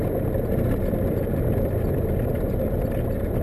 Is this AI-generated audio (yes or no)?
no